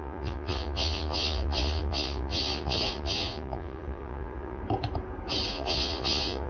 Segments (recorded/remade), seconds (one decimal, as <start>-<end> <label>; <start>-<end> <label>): 0.0-4.6 remade; 4.6-5.5 recorded; 5.5-6.5 remade